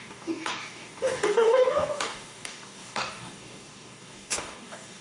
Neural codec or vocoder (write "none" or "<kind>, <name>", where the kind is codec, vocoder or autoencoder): codec, DAC